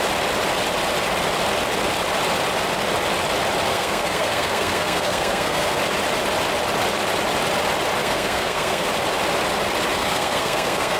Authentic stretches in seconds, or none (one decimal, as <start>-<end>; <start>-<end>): 0.0-3.7; 5.8-8.0; 8.9-10.0